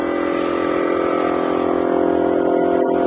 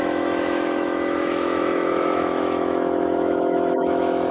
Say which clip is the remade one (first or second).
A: second